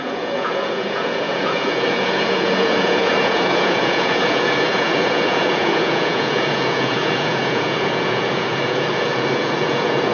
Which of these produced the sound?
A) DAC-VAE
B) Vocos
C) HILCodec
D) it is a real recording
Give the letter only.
B